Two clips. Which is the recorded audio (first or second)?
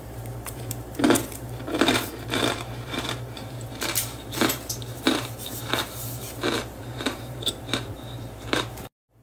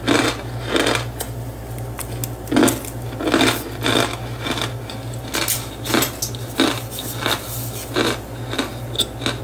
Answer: second